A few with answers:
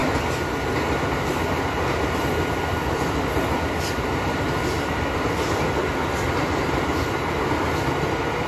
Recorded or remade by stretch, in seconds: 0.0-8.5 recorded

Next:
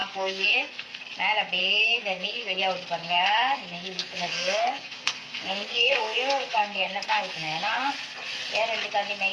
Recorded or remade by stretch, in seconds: 0.0-1.0 remade; 1.0-1.6 recorded; 1.6-2.6 remade; 2.6-3.0 recorded; 3.0-7.9 remade; 7.9-9.3 recorded

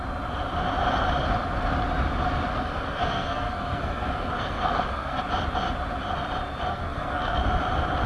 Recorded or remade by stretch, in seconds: 0.0-2.5 recorded; 2.5-5.2 remade; 5.2-6.7 recorded; 6.7-7.4 remade; 7.4-8.1 recorded

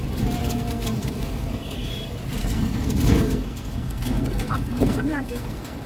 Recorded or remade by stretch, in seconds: 0.0-0.4 recorded; 0.4-1.9 remade; 1.9-2.4 recorded; 2.4-5.9 remade

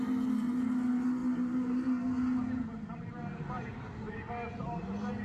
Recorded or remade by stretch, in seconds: 0.0-5.2 recorded

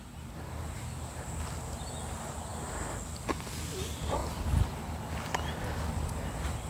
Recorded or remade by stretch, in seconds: 0.0-6.7 recorded